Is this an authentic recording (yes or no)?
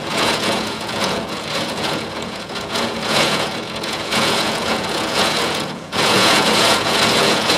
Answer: no